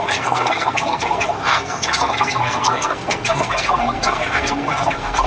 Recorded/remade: remade